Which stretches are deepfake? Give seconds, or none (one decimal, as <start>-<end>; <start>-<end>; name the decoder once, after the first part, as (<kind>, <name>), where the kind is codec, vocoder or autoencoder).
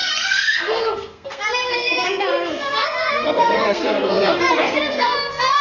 0.0-5.6 (codec, SNAC)